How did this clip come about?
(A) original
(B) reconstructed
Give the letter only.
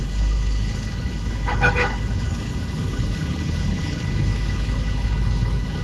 B